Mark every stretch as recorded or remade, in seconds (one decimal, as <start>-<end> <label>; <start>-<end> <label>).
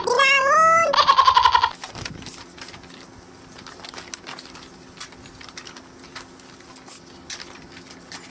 0.0-8.3 recorded